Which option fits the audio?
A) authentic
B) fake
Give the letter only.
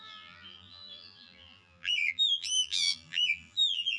B